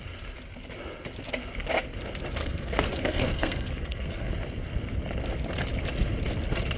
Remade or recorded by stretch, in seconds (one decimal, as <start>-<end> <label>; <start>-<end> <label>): 0.0-2.4 recorded; 2.4-4.3 remade; 4.3-6.8 recorded